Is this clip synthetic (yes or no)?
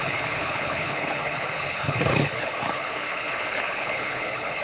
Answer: yes